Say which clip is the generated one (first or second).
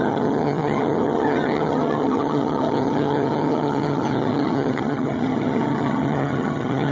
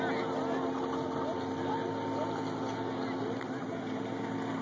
first